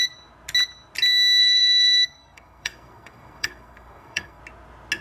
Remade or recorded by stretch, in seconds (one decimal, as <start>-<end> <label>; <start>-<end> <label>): 0.0-1.4 recorded; 1.4-4.4 remade; 4.4-5.0 recorded

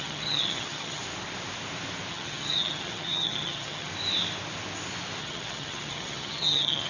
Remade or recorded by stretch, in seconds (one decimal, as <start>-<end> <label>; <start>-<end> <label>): 0.0-1.0 remade; 1.0-2.1 recorded; 2.1-3.9 remade; 3.9-5.2 recorded; 5.2-6.9 remade